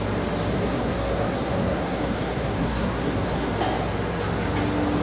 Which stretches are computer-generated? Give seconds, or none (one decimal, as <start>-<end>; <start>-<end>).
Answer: 0.5-3.5